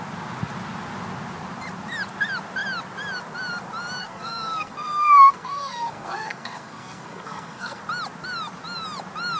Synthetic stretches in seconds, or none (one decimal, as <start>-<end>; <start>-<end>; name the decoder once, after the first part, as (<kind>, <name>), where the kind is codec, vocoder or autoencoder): 4.0-7.8 (codec, SNAC)

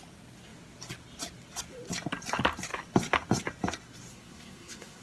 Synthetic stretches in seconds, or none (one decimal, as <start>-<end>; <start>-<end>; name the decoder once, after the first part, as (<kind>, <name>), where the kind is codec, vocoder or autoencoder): 4.1-5.0 (codec, SNAC)

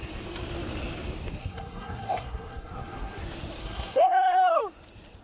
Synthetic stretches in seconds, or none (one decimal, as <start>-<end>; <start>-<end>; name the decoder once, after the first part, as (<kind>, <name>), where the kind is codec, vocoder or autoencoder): 1.4-3.2 (codec, SNAC); 3.6-4.6

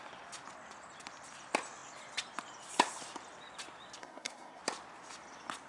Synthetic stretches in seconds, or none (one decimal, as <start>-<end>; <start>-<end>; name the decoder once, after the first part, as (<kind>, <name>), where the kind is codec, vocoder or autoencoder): 4.0-4.6 (codec, SNAC)

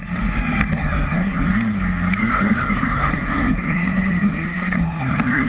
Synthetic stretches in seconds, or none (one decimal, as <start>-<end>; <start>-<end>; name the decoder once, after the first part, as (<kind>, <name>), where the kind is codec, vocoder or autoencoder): 0.8-1.5 (codec, SNAC); 2.2-5.5

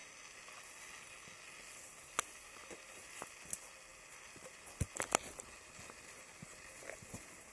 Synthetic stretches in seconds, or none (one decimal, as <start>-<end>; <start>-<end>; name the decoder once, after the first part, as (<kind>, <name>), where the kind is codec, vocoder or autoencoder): none

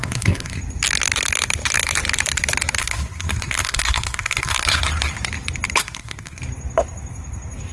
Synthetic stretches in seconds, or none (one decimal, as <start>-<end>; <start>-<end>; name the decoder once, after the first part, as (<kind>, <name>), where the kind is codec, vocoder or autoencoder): 0.0-0.6 (codec, SNAC); 2.8-4.8; 5.8-6.4

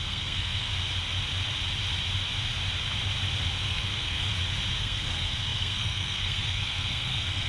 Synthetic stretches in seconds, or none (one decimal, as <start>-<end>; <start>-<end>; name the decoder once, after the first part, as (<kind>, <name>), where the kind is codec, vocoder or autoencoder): 0.0-0.7 (codec, SNAC); 3.6-4.3; 4.8-7.5